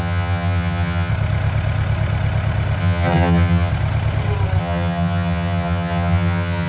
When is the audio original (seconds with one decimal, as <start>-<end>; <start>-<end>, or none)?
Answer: 1.1-2.8; 3.7-4.6